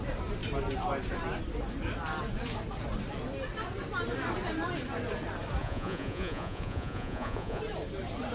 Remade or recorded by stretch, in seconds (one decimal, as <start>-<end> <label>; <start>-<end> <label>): 0.0-5.6 recorded; 5.6-7.6 remade; 7.6-8.3 recorded

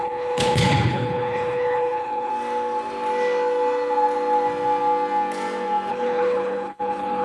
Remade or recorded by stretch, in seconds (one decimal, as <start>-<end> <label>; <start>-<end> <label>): 0.0-2.3 remade; 2.3-5.9 recorded; 5.9-7.2 remade

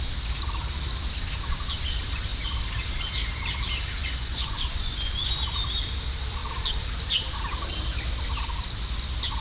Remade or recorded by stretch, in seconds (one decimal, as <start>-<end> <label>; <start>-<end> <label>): 0.0-4.0 recorded; 4.0-5.3 remade; 5.3-9.4 recorded

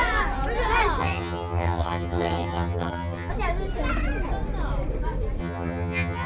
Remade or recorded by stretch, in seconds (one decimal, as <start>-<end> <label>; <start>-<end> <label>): 0.0-1.0 recorded; 1.0-3.3 remade; 3.3-5.4 recorded; 5.4-6.3 remade

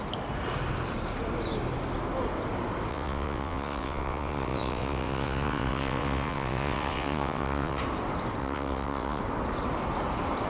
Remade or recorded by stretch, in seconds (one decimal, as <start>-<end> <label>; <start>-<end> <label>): 0.0-2.9 recorded; 2.9-7.8 remade; 7.8-8.4 recorded; 8.4-9.2 remade; 9.2-10.5 recorded